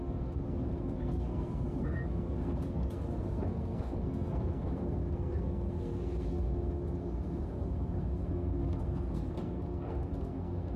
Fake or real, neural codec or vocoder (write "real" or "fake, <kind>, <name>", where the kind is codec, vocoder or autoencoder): fake, codec, SNAC